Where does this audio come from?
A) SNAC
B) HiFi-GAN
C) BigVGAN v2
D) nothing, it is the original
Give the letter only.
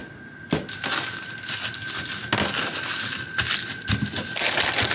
D